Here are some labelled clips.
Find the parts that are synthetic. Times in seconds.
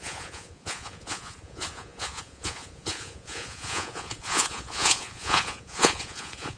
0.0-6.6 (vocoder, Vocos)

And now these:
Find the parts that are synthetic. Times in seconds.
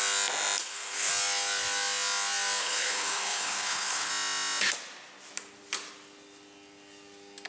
0.6-1.1 (codec, HILCodec); 2.6-4.1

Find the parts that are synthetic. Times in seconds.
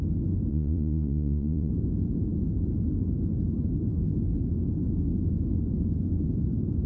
0.5-1.7 (vocoder, Vocos)